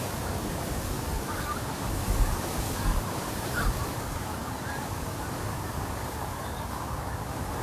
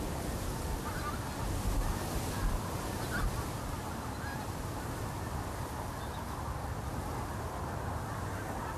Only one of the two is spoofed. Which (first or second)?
first